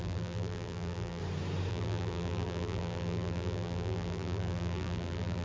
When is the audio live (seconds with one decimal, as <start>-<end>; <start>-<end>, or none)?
1.2-1.7